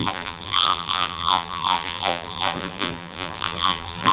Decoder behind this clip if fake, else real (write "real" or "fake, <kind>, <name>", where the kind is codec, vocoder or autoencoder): fake, vocoder, BigVGAN v2